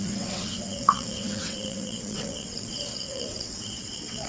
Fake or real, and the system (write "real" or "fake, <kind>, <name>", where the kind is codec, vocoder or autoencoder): fake, vocoder, WaveNeXt